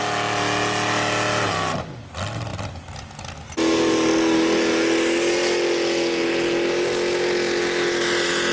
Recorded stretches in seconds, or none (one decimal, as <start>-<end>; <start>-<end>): 0.0-8.5